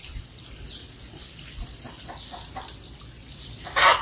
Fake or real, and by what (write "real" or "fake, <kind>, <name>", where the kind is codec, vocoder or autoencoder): real